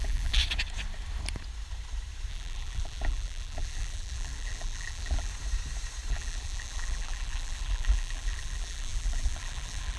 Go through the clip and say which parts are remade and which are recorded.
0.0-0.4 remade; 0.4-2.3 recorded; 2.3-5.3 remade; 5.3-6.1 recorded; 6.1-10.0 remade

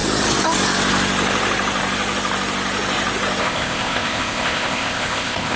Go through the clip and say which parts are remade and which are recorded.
0.0-3.4 recorded; 3.4-5.6 remade